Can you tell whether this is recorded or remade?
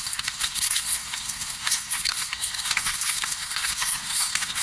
remade